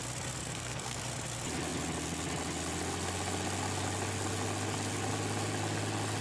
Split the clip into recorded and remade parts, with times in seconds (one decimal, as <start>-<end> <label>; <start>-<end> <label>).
0.0-0.4 recorded; 0.4-1.0 remade; 1.0-6.2 recorded